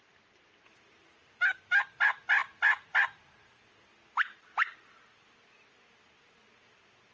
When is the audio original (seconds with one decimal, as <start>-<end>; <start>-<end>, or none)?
0.0-7.1